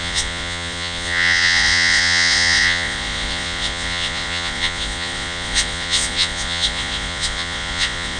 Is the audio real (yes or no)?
no